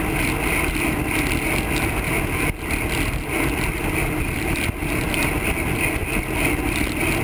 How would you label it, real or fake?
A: real